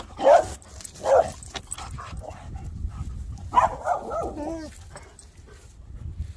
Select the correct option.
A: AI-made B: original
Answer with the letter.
B